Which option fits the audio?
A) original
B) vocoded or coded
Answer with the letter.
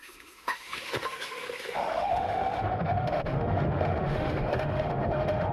B